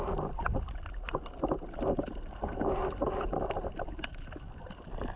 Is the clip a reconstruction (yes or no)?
no